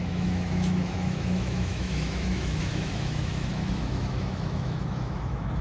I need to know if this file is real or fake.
fake